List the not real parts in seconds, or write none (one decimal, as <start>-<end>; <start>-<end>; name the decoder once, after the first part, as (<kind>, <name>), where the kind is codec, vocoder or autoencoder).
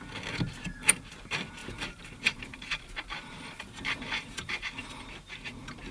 1.6-4.7 (vocoder, BigVGAN v2)